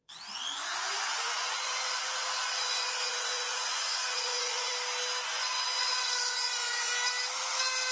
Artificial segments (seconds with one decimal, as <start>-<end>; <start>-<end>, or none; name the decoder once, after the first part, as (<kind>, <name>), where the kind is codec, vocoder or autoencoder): 0.0-4.7 (vocoder, Vocos); 5.2-6.9